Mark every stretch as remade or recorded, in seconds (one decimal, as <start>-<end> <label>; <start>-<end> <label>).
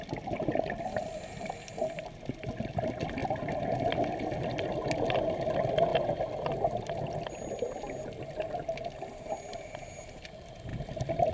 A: 0.0-11.3 recorded